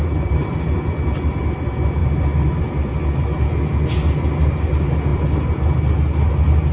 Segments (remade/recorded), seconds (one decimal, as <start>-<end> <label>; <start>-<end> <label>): 0.0-0.4 recorded; 0.4-0.9 remade; 0.9-5.1 recorded; 5.1-5.8 remade; 5.8-6.7 recorded